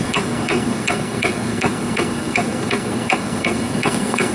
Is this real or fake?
fake